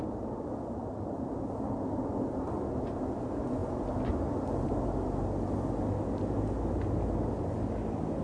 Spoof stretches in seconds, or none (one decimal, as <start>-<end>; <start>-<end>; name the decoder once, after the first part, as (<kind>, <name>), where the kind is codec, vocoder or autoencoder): none